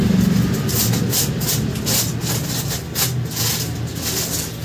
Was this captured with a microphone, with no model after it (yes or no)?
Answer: yes